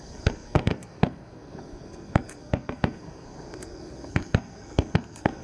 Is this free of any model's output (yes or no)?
no